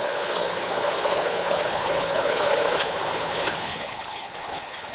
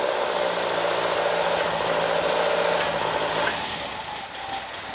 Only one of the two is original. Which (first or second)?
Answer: second